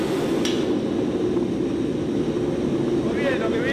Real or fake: real